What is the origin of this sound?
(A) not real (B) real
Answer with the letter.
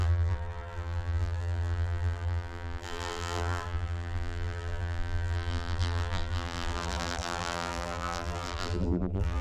A